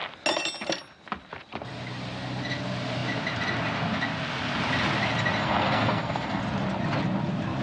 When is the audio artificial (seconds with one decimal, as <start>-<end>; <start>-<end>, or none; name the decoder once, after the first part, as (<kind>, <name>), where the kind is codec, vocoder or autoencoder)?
5.4-6.4 (codec, SNAC)